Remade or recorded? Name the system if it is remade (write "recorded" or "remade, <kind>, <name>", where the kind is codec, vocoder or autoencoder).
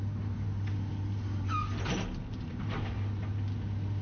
recorded